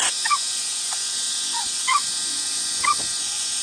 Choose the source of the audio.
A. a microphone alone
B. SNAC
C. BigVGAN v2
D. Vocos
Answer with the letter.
D